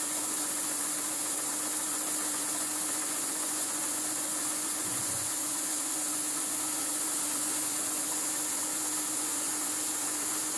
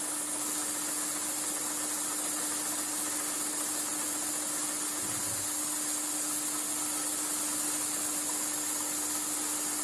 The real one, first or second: second